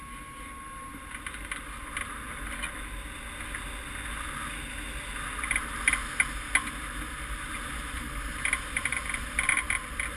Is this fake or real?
real